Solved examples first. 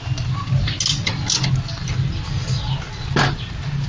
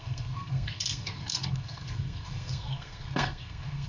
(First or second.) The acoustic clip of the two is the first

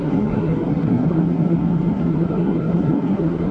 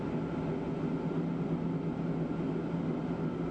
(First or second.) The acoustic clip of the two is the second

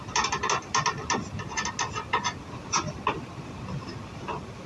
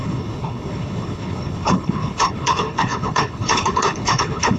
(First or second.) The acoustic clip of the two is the first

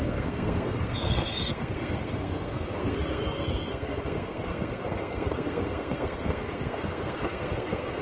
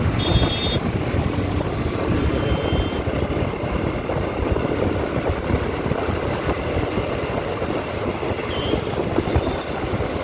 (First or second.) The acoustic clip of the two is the second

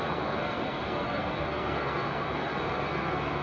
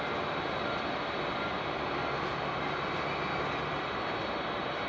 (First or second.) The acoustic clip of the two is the second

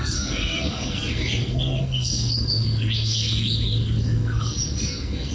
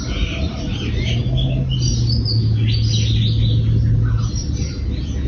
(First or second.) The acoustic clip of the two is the second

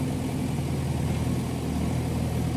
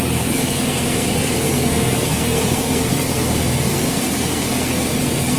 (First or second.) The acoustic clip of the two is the first